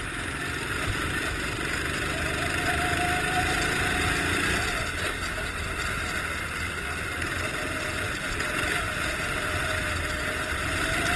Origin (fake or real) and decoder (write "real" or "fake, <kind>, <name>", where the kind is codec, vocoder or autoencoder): real